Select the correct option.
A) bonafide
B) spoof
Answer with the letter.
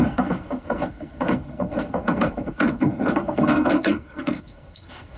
B